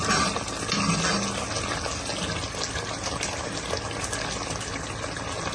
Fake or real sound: real